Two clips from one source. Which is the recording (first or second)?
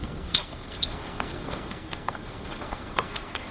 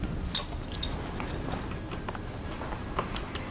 second